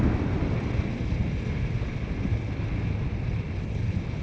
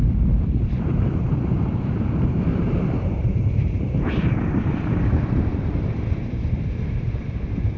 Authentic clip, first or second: first